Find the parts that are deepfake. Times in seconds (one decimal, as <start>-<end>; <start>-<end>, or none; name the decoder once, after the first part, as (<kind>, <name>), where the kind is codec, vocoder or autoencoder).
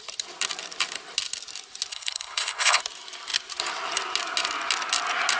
1.9-2.8 (codec, HILCodec)